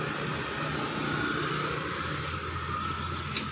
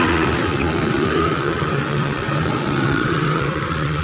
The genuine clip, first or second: first